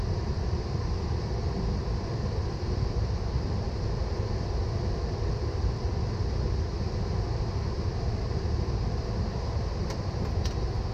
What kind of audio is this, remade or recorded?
recorded